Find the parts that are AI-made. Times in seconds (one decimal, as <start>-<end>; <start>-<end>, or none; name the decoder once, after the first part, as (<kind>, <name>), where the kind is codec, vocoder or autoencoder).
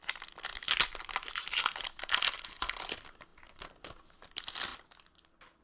0.5-1.6 (vocoder, BigVGAN v2)